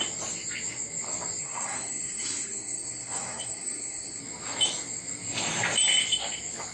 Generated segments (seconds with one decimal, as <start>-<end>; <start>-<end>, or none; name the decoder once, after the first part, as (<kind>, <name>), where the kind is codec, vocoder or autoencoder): 1.4-4.2 (codec, SNAC)